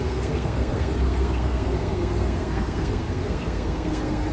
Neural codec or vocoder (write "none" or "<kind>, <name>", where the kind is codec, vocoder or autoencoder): codec, SNAC